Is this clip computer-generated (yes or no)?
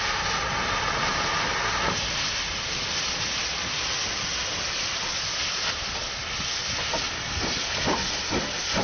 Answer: no